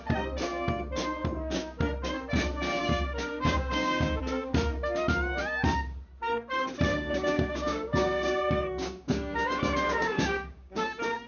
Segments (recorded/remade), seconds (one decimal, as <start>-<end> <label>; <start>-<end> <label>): 0.0-2.8 recorded; 2.8-4.2 remade; 4.2-6.9 recorded; 6.9-10.8 remade; 10.8-11.3 recorded